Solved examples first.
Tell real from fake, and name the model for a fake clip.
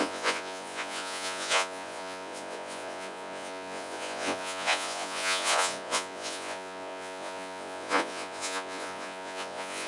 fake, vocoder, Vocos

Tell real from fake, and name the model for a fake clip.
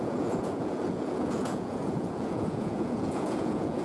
fake, vocoder, Vocos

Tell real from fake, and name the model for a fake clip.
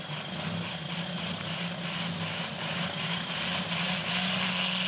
real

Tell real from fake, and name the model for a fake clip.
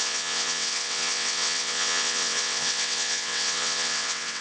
fake, vocoder, WaveNeXt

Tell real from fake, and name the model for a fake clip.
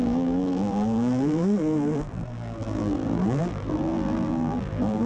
fake, vocoder, BigVGAN v2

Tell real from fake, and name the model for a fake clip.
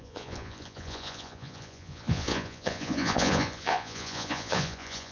fake, vocoder, Vocos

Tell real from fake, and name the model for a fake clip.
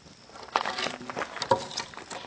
real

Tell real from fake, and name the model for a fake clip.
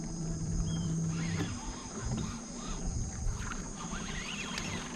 fake, vocoder, BigVGAN v2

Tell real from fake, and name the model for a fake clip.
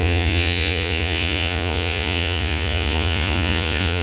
fake, vocoder, Vocos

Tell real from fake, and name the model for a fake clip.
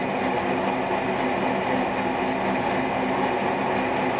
real